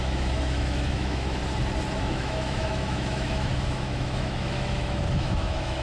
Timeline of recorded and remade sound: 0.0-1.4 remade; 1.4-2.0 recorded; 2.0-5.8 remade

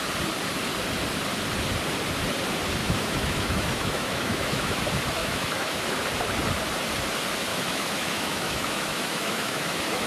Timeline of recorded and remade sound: 0.0-2.8 recorded; 2.8-4.8 remade; 4.8-5.2 recorded; 5.2-5.8 remade; 5.8-7.5 recorded; 7.5-10.1 remade

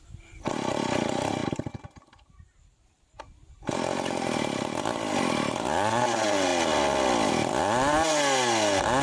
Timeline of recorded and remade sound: 0.0-1.4 recorded; 1.4-3.2 remade; 3.2-9.0 recorded

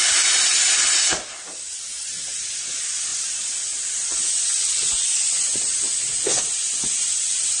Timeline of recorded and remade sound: 0.0-7.6 recorded

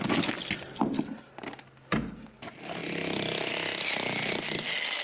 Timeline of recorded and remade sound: 0.0-5.0 recorded